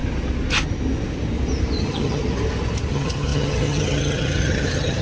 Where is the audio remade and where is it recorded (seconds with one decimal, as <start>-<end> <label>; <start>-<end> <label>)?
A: 0.0-1.8 recorded; 1.8-2.2 remade; 2.2-2.9 recorded; 2.9-5.0 remade